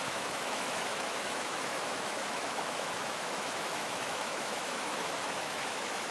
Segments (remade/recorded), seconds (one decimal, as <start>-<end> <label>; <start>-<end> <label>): 0.0-6.1 remade